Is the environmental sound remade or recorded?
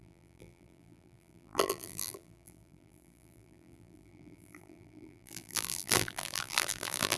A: remade